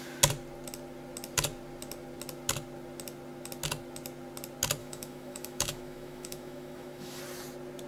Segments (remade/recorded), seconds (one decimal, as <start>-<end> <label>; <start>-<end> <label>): 0.0-4.8 recorded; 4.8-7.2 remade; 7.2-7.9 recorded